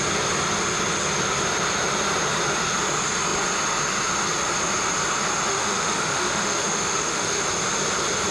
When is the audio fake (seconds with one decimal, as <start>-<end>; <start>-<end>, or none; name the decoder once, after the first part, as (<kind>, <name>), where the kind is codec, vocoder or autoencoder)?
5.5-7.4 (autoencoder, DAC-VAE)